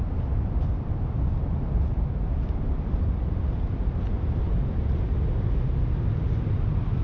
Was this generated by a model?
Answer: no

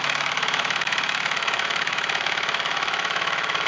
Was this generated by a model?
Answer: yes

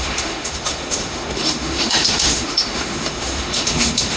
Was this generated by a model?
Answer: yes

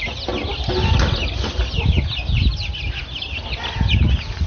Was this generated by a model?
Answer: no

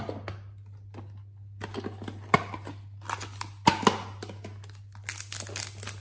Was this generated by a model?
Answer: no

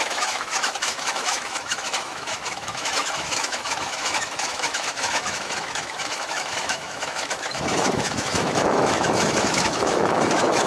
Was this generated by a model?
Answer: yes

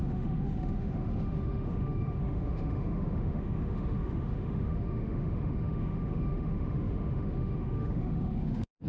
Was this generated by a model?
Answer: yes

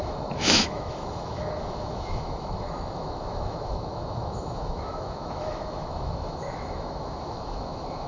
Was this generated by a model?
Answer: yes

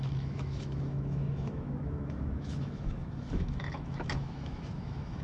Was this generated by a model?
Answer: yes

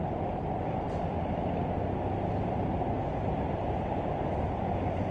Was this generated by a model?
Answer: no